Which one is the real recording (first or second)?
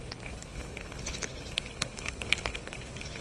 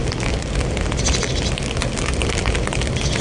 second